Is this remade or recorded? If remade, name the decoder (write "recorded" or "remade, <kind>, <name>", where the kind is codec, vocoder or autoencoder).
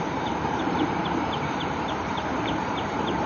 remade, vocoder, BigVGAN v2